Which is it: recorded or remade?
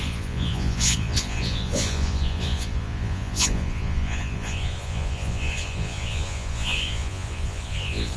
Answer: remade